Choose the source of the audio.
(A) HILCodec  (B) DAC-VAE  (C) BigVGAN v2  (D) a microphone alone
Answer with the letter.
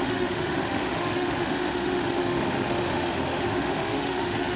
B